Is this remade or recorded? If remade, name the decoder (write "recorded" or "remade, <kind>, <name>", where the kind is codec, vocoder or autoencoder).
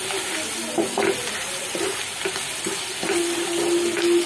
recorded